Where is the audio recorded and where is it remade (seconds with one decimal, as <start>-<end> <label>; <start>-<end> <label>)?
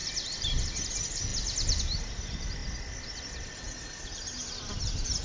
0.0-0.5 remade; 0.5-5.2 recorded